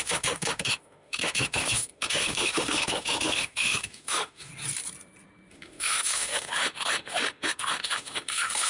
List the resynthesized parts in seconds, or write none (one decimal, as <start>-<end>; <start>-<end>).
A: 0.0-4.5; 5.5-8.7